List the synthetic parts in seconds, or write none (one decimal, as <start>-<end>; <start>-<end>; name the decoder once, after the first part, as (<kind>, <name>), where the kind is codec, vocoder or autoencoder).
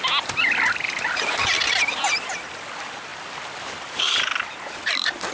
3.1-5.3 (vocoder, BigVGAN v2)